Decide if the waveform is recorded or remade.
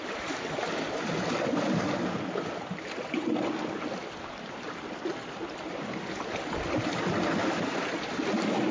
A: recorded